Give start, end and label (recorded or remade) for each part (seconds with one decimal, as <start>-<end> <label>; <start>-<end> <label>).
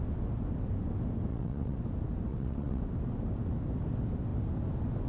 0.0-1.3 recorded; 1.3-1.8 remade; 1.8-2.3 recorded; 2.3-2.8 remade; 2.8-5.1 recorded